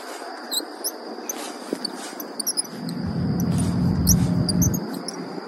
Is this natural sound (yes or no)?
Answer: yes